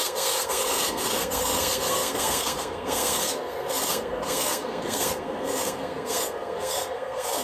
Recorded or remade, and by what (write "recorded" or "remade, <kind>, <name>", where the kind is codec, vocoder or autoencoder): remade, codec, SNAC